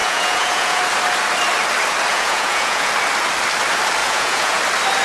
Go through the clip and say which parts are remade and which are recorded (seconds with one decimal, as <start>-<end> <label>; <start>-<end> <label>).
0.0-0.8 remade; 0.8-2.1 recorded; 2.1-2.9 remade; 2.9-4.0 recorded; 4.0-4.6 remade; 4.6-5.0 recorded